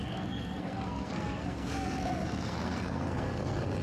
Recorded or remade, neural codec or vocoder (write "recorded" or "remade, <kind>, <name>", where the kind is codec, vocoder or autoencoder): remade, codec, SNAC